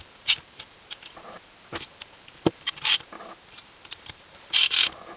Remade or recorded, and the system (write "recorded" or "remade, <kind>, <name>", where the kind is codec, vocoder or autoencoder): remade, vocoder, BigVGAN v2